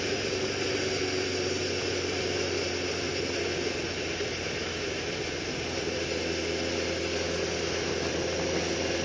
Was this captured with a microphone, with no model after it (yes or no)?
yes